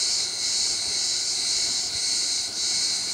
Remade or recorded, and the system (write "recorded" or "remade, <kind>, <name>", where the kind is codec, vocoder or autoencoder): remade, vocoder, BigVGAN v2